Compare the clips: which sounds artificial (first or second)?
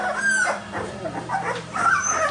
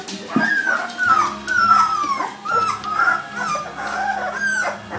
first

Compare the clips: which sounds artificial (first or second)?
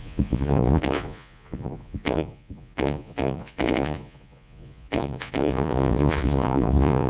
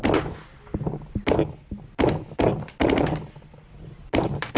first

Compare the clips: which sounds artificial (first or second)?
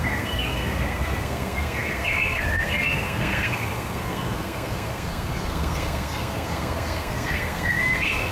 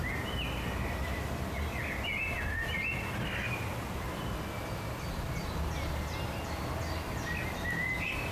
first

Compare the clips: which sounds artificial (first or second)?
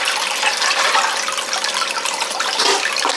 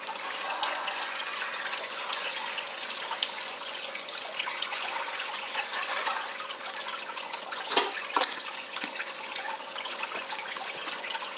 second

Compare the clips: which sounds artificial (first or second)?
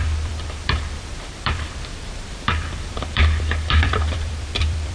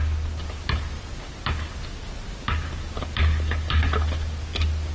first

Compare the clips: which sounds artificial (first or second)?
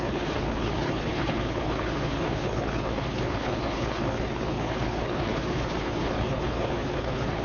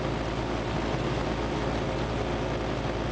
first